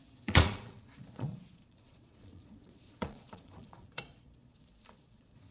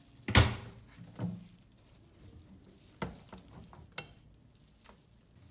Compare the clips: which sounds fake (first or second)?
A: first